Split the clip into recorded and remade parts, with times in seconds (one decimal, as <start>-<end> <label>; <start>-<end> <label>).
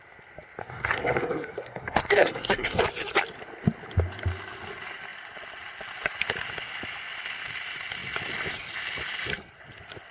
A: 0.0-0.6 recorded; 0.6-2.8 remade; 2.8-10.1 recorded